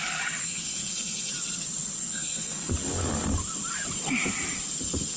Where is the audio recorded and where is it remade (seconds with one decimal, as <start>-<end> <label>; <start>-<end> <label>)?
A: 0.0-0.4 recorded; 0.4-1.3 remade; 1.3-2.0 recorded; 2.0-2.7 remade; 2.7-5.2 recorded